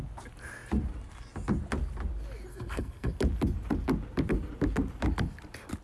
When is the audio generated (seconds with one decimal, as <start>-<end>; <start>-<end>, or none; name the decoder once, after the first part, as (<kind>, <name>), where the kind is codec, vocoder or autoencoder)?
2.5-3.1 (codec, SNAC)